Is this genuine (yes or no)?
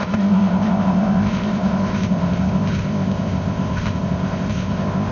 no